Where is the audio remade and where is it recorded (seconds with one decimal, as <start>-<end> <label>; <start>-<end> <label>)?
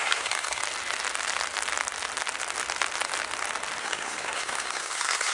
0.0-0.6 remade; 0.6-3.8 recorded; 3.8-5.3 remade